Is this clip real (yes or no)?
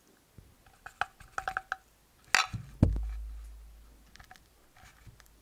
yes